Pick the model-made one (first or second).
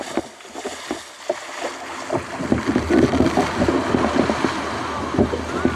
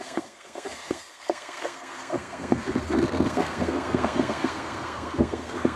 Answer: second